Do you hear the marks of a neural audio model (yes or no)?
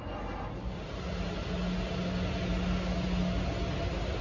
no